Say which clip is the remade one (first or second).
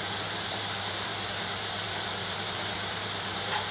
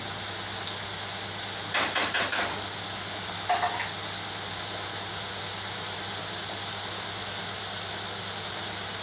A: first